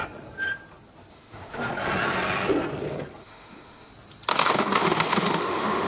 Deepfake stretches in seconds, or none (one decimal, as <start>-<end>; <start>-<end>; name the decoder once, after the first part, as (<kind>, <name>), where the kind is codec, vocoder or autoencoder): 1.1-1.7 (autoencoder, DAC-VAE); 3.2-3.9; 4.3-5.9